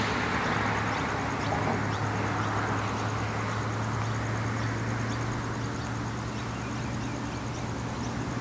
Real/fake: real